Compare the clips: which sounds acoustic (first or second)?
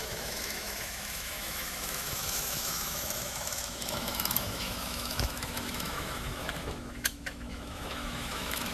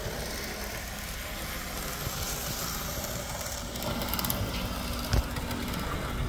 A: second